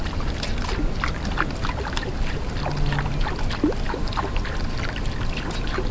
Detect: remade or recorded recorded